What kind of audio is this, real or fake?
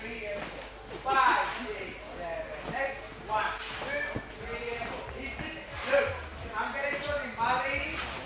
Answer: real